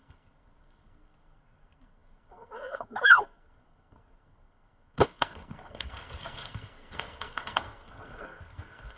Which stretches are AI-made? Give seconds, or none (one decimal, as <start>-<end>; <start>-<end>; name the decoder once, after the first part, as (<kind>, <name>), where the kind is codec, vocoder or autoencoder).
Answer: 0.0-9.0 (codec, SNAC)